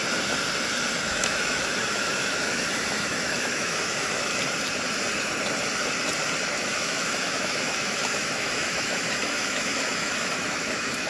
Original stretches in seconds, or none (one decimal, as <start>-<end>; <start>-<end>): 0.0-1.1; 4.3-6.6